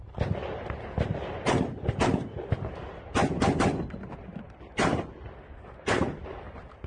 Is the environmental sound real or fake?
real